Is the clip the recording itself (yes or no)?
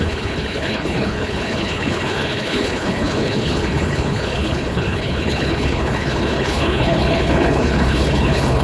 no